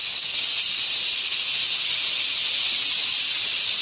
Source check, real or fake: real